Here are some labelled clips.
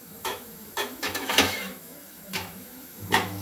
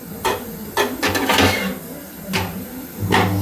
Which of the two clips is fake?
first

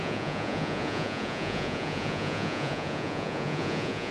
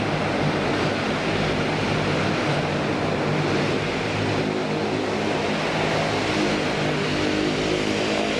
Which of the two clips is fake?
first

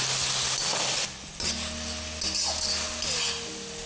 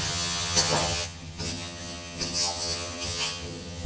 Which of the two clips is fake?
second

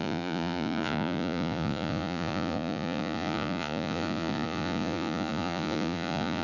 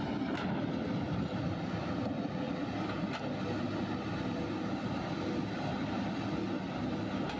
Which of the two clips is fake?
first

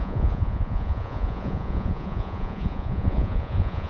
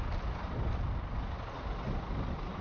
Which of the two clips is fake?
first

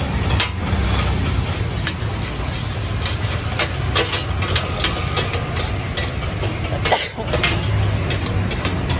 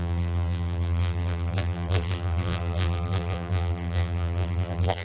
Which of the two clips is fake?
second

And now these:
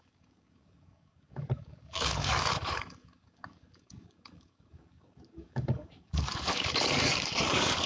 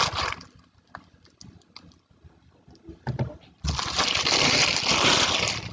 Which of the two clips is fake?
first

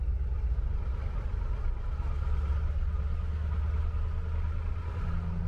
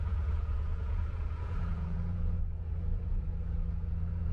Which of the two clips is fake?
second